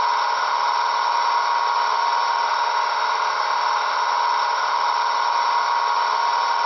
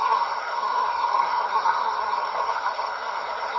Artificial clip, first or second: second